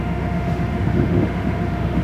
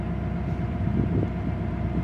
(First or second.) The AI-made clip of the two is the first